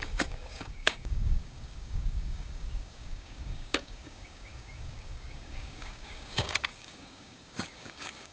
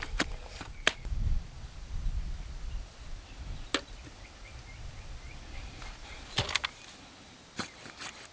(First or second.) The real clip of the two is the second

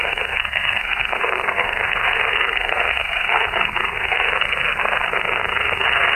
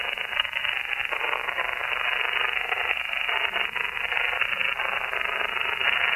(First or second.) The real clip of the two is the second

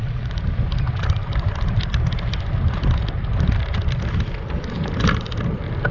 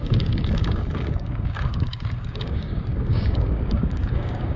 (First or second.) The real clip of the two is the first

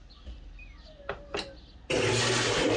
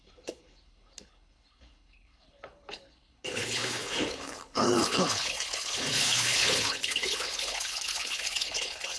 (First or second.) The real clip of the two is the first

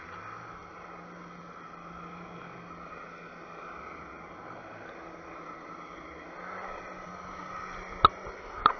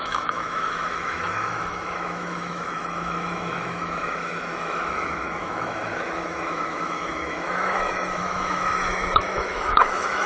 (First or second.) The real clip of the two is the first